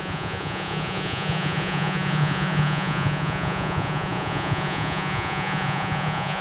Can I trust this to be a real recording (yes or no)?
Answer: no